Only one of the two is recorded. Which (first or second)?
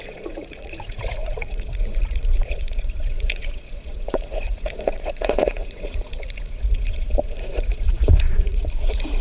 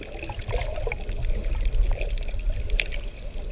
second